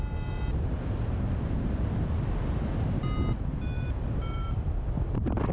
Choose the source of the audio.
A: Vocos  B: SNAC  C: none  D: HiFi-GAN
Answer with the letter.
C